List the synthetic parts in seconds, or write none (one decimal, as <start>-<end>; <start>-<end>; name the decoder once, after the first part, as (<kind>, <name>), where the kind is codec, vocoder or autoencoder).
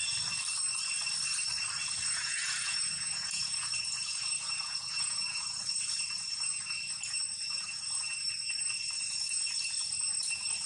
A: 2.1-10.7 (vocoder, Vocos)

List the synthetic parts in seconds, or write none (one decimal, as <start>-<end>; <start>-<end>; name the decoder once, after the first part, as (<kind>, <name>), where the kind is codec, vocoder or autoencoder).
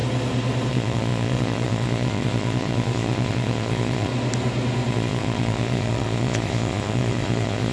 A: 0.7-4.1 (vocoder, Vocos); 4.9-7.7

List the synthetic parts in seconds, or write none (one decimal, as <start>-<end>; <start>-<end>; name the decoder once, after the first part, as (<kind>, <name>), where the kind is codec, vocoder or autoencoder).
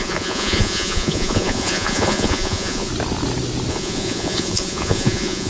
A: 0.0-2.9 (vocoder, Vocos); 3.7-5.5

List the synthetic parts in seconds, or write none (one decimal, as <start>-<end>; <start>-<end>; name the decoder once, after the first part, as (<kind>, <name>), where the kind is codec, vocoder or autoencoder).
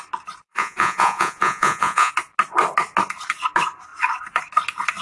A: 0.5-2.1 (vocoder, Vocos)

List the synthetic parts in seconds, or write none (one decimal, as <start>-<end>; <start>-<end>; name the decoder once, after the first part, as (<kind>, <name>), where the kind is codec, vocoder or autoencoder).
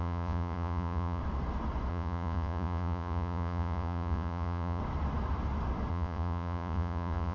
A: 0.0-1.2 (vocoder, Vocos); 1.9-4.8; 5.9-7.3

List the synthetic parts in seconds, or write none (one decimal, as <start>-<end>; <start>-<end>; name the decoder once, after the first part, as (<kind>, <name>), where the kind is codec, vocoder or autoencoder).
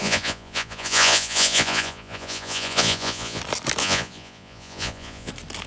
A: 0.0-3.4 (vocoder, Vocos); 3.8-5.3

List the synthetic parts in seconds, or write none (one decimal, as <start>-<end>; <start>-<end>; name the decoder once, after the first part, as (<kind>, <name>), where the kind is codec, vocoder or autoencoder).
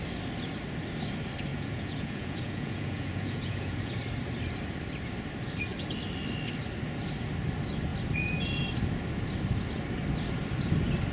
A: 1.5-3.9 (vocoder, Vocos)